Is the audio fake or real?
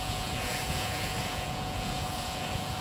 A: fake